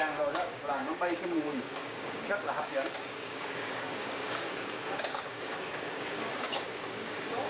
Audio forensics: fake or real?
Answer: fake